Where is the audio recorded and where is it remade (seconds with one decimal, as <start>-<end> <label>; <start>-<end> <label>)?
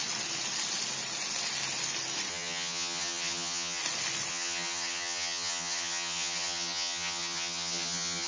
0.0-2.3 recorded; 2.3-3.8 remade; 3.8-4.3 recorded; 4.3-8.3 remade